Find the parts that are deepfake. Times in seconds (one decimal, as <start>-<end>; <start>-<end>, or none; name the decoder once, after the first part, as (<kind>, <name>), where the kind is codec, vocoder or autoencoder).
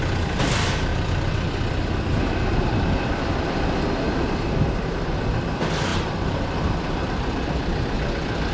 none